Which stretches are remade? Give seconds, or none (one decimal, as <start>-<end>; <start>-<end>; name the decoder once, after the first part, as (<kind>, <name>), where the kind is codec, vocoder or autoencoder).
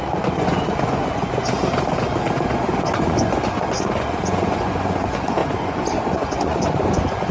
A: 0.0-1.6 (vocoder, Vocos); 2.5-7.3